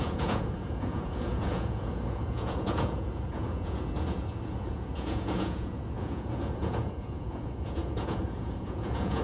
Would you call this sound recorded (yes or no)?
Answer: no